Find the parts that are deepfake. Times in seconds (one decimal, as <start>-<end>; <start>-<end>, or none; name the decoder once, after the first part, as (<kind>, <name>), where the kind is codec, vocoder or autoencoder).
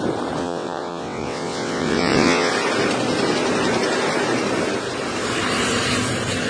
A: 0.4-2.5 (vocoder, WaveNeXt)